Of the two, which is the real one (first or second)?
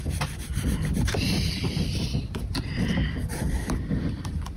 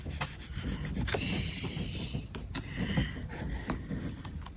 second